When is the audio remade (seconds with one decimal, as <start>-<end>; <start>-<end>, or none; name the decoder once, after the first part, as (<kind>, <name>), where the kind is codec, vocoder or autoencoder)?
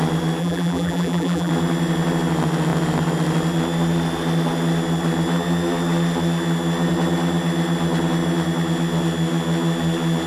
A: 0.4-1.5 (vocoder, BigVGAN v2)